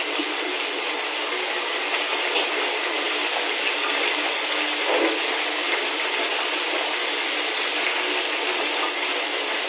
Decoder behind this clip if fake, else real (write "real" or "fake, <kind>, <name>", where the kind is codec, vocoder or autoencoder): real